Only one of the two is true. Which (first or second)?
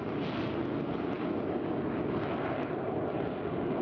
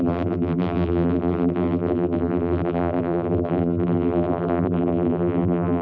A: first